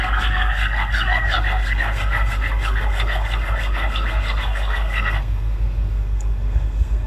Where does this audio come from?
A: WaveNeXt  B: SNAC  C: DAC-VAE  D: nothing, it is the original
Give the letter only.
B